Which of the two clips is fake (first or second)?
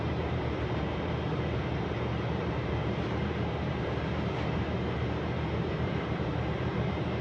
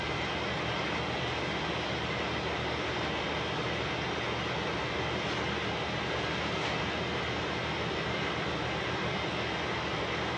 first